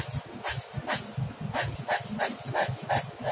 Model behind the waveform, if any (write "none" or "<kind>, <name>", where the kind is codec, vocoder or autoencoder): none